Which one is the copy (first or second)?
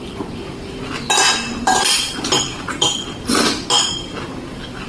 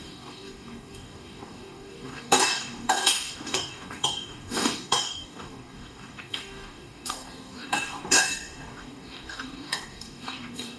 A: second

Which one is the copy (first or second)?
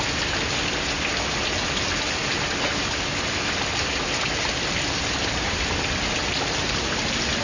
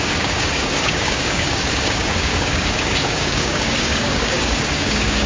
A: second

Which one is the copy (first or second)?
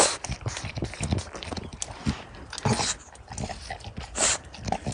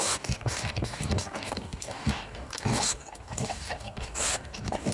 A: second